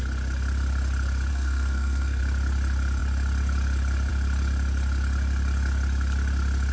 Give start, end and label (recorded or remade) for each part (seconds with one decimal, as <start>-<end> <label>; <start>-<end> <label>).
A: 0.0-1.3 recorded; 1.3-2.2 remade; 2.2-6.7 recorded